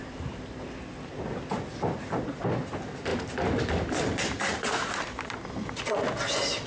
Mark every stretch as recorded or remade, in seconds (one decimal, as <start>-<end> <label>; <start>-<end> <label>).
0.0-6.7 recorded